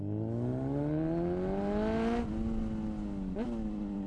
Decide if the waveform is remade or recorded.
recorded